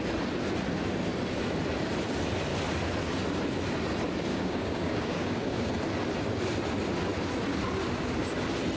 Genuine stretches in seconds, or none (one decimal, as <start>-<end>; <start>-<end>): 0.0-4.3; 5.7-8.8